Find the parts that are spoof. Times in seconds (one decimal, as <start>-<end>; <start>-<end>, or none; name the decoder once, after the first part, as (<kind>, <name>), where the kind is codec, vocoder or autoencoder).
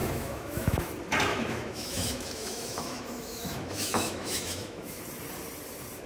0.0-0.9 (autoencoder, DAC-VAE); 1.3-5.0